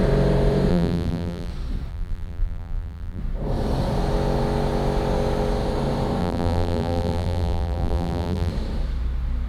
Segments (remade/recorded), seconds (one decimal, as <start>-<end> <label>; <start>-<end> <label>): 0.0-0.7 recorded; 0.7-1.5 remade; 1.5-1.9 recorded; 1.9-3.2 remade; 3.2-6.2 recorded; 6.2-8.5 remade; 8.5-9.5 recorded